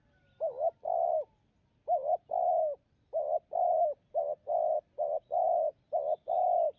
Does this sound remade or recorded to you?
recorded